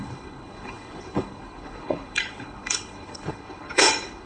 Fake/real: fake